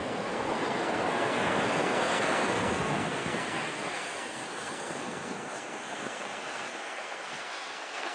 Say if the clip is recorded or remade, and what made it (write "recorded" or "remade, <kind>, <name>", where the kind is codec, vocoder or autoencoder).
remade, codec, SNAC